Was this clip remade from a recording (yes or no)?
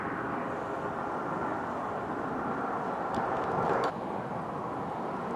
no